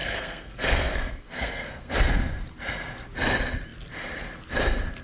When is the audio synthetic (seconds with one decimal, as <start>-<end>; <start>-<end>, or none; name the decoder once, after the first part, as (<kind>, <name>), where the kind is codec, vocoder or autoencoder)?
0.0-1.9 (codec, SNAC)